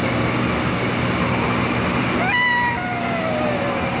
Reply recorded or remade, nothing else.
recorded